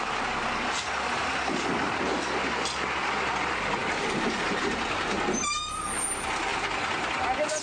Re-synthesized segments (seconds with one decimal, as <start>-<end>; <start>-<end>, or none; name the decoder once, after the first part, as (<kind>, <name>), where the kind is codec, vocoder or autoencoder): 3.8-4.5 (vocoder, BigVGAN v2)